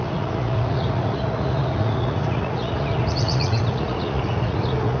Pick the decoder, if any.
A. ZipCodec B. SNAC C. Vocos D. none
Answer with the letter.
C